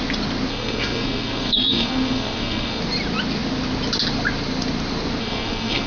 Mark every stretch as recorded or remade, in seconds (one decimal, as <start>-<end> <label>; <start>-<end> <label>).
0.0-0.5 recorded; 0.5-2.8 remade; 2.8-5.2 recorded; 5.2-5.9 remade